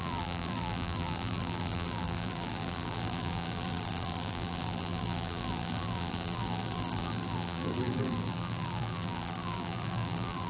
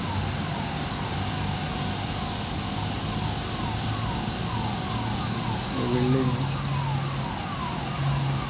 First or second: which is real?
second